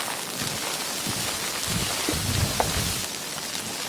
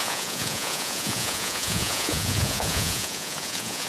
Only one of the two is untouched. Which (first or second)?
first